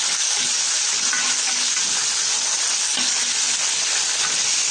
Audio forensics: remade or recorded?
recorded